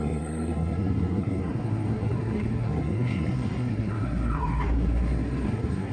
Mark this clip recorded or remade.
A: remade